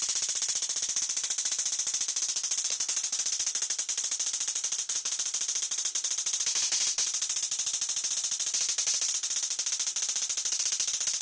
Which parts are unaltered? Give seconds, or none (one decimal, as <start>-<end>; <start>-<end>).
0.0-11.2